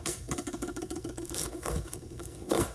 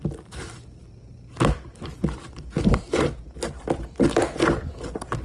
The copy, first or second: first